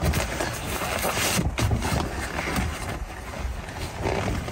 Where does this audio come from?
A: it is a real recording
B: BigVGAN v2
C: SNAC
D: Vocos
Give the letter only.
A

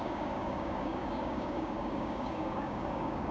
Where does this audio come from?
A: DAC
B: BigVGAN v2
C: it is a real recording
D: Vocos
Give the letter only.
A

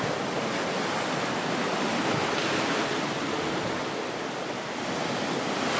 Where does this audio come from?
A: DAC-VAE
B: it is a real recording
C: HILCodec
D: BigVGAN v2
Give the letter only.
B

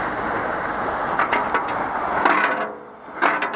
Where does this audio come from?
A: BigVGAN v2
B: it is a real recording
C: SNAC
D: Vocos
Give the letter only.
B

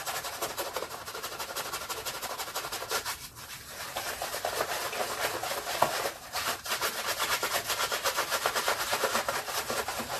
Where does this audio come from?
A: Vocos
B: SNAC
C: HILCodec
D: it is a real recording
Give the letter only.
D